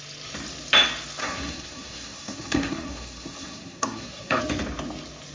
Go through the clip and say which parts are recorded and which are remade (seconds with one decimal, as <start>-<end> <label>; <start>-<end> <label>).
0.0-1.2 recorded; 1.2-4.4 remade; 4.4-5.3 recorded